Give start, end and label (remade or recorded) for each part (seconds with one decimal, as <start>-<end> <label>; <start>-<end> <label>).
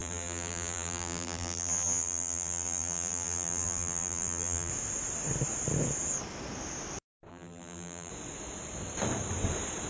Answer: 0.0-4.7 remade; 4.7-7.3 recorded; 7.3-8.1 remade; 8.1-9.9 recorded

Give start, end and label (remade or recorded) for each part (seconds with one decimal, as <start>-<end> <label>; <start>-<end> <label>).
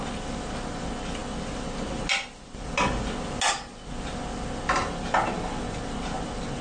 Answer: 0.0-6.6 recorded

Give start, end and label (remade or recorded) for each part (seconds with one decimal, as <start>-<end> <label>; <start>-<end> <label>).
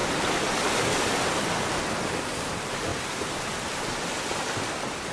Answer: 0.0-2.9 recorded; 2.9-3.8 remade; 3.8-5.1 recorded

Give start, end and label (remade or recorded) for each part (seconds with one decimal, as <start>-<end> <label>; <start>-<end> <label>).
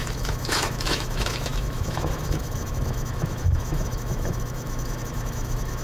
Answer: 0.0-5.8 remade